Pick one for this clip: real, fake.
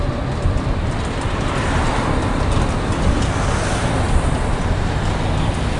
real